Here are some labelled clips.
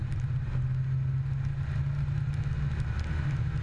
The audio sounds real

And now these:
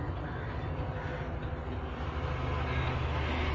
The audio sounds real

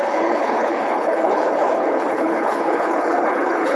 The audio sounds fake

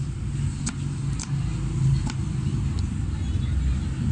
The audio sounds real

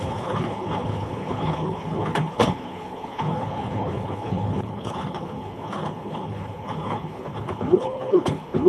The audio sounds fake